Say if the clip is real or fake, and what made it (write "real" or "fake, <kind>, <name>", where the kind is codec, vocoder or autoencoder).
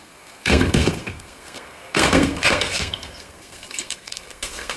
fake, codec, SNAC